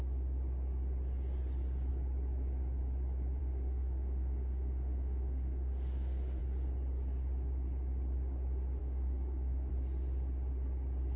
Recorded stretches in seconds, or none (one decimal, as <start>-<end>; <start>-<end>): 0.0-3.4; 6.4-8.8; 9.7-11.2